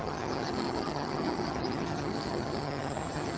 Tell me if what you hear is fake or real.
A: fake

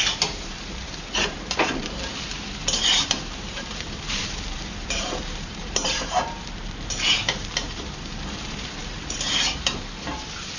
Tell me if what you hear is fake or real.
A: fake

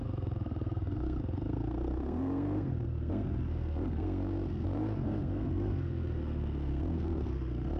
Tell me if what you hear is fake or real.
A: fake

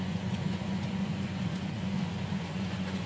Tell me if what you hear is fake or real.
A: fake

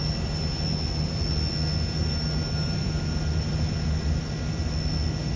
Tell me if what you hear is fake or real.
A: real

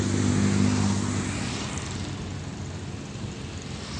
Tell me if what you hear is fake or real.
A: real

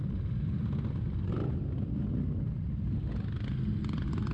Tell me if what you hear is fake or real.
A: real